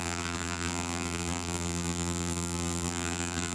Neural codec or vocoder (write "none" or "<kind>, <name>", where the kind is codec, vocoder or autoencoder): vocoder, BigVGAN v2